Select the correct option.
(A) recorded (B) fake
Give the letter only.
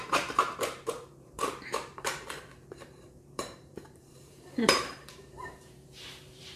B